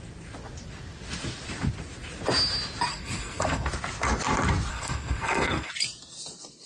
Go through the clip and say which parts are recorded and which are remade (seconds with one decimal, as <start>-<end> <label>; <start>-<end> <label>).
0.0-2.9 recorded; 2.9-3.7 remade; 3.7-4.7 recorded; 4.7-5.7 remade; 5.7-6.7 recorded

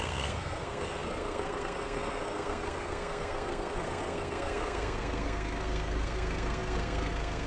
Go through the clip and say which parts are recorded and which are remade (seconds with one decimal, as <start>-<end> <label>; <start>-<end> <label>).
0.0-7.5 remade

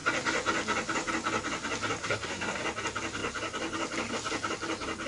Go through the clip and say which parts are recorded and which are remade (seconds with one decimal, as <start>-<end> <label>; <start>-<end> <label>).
0.0-2.0 recorded; 2.0-2.6 remade; 2.6-5.1 recorded

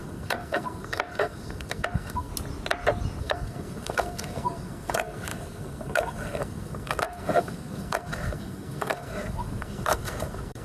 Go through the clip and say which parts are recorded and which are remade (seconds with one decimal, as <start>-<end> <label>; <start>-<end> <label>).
0.0-2.3 remade; 2.3-3.2 recorded; 3.2-10.6 remade

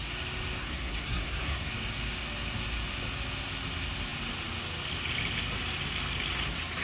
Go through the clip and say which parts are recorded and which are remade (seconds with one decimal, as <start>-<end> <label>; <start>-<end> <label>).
0.0-0.6 recorded; 0.6-1.7 remade; 1.7-6.8 recorded